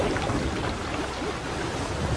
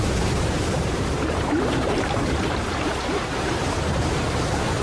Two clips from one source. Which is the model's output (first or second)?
second